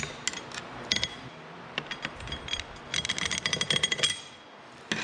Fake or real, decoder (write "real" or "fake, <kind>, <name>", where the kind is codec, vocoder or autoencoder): real